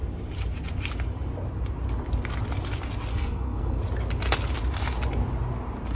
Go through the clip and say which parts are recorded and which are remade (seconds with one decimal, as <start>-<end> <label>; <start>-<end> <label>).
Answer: 0.0-3.1 recorded; 3.1-3.8 remade; 3.8-5.9 recorded